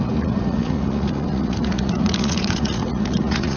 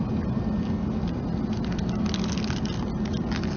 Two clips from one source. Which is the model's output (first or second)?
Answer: first